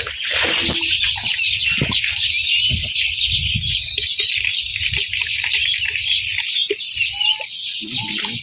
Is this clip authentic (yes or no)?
yes